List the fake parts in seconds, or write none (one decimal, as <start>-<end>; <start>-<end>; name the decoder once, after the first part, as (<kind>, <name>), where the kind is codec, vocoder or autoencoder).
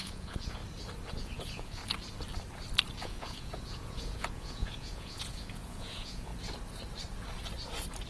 0.0-0.6 (vocoder, Vocos); 1.2-1.8; 3.0-6.3